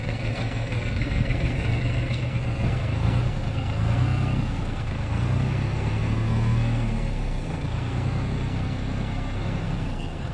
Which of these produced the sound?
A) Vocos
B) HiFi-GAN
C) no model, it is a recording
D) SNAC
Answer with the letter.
D